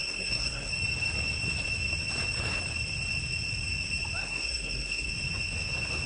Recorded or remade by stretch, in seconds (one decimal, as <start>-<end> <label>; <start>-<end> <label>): 0.0-0.7 remade; 0.7-4.2 recorded; 4.2-5.1 remade; 5.1-6.1 recorded